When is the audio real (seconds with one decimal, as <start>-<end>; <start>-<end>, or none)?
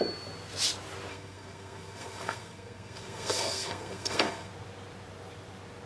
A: 0.0-1.1; 4.5-5.9